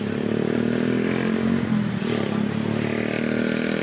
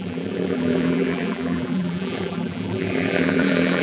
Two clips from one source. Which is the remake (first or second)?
second